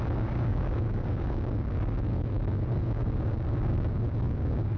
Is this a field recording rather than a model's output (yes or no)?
no